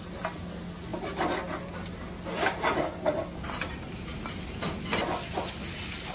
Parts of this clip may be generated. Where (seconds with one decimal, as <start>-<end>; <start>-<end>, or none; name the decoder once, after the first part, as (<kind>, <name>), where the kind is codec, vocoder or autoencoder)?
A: none